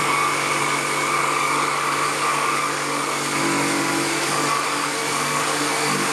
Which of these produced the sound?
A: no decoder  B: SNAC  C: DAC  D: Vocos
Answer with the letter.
C